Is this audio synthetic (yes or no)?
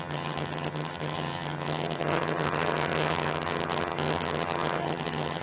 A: yes